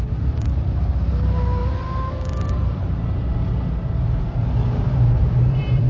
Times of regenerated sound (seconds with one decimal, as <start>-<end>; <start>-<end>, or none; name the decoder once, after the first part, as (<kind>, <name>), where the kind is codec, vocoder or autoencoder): 0.0-5.9 (vocoder, BigVGAN v2)